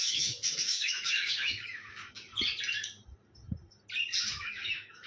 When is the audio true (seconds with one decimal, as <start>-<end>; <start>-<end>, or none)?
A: 2.3-4.3